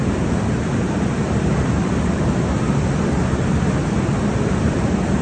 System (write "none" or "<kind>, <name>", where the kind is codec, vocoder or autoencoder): vocoder, BigVGAN v2